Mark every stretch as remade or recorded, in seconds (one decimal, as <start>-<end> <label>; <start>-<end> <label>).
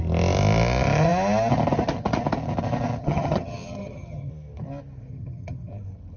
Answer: 0.0-3.0 recorded; 3.0-4.3 remade; 4.3-5.1 recorded; 5.1-5.7 remade; 5.7-6.2 recorded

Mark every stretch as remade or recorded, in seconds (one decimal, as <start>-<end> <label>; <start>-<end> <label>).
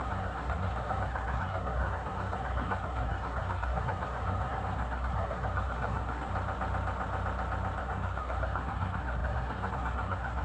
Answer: 0.0-6.3 remade; 6.3-7.8 recorded; 7.8-10.4 remade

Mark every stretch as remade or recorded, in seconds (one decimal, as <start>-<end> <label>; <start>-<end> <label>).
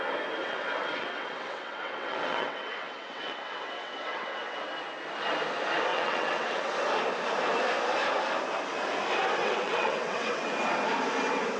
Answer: 0.0-0.4 recorded; 0.4-4.7 remade; 4.7-5.9 recorded; 5.9-6.7 remade; 6.7-9.4 recorded; 9.4-10.5 remade; 10.5-11.6 recorded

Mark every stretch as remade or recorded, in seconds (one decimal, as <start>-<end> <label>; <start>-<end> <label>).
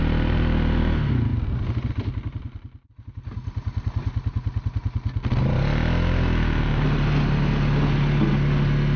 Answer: 0.0-9.0 recorded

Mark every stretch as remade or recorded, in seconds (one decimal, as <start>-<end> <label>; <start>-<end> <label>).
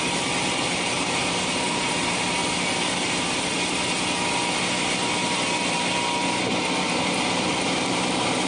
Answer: 0.0-2.4 remade; 2.4-7.3 recorded; 7.3-8.5 remade